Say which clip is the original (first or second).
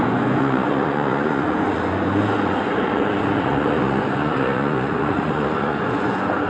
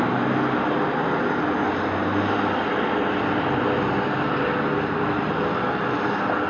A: second